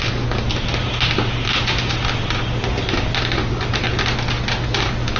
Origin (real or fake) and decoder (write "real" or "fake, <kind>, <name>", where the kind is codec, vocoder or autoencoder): real